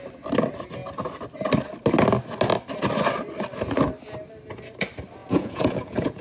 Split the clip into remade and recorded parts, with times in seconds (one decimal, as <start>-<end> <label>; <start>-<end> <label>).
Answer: 0.0-5.2 recorded; 5.2-6.2 remade